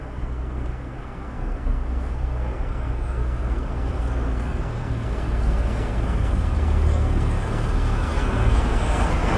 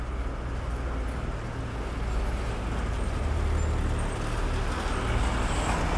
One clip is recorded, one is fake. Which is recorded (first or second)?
second